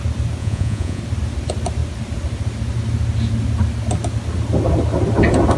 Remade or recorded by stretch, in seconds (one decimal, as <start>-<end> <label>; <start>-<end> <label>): 0.0-0.4 recorded; 0.4-1.0 remade; 1.0-5.6 recorded